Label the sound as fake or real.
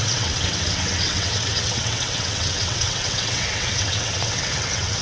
fake